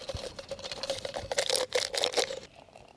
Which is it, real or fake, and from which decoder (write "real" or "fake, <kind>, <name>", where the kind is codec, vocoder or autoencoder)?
fake, vocoder, BigVGAN v2